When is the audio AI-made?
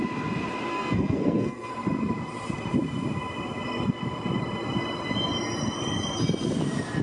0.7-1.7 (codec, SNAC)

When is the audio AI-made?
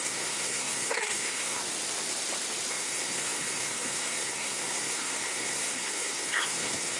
0.0-1.6 (codec, SNAC); 2.7-7.0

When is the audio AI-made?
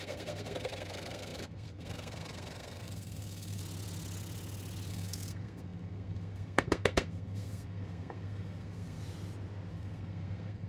0.0-3.6 (codec, SNAC); 4.9-9.0; 9.7-10.7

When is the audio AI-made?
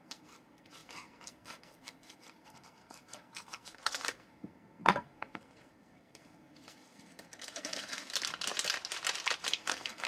0.0-8.1 (codec, SNAC); 9.5-10.1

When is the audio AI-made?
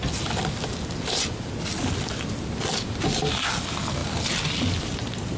none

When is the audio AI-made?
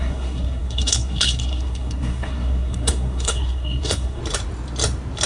0.0-4.2 (codec, SNAC)